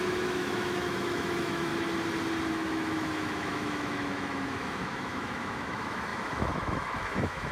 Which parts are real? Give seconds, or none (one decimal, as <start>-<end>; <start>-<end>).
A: 1.7-2.5

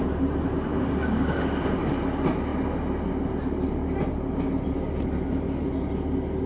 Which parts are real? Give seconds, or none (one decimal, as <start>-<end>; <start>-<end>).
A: 0.0-0.7; 1.4-6.5

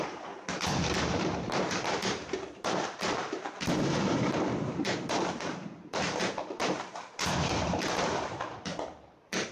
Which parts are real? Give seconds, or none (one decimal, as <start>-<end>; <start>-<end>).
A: none

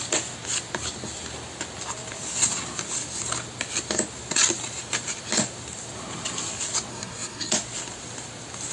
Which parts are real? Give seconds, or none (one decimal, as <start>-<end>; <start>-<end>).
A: 0.0-6.9; 7.5-8.7

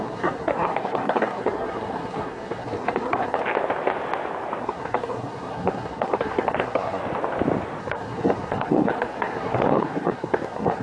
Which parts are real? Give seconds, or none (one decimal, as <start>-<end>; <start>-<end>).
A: 3.4-4.6; 7.0-7.8